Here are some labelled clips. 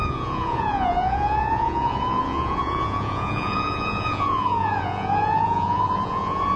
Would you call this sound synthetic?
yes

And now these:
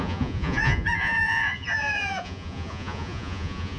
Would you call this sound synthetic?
yes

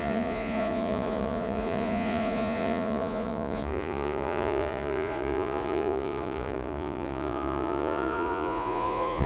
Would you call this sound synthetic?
yes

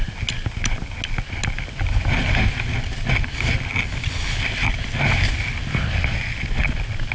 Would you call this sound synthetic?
no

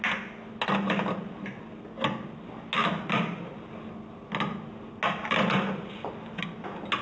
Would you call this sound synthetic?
no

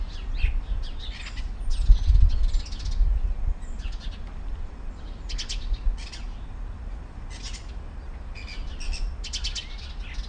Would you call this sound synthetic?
no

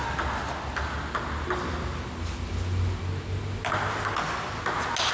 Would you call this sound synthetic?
no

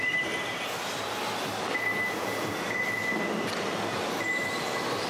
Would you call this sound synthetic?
no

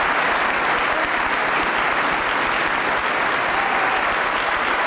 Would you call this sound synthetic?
no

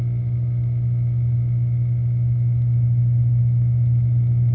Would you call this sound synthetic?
no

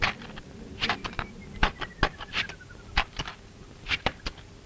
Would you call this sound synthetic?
no